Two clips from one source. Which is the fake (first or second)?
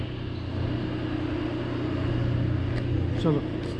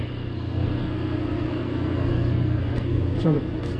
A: second